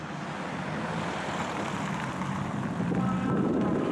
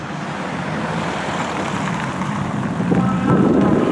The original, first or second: first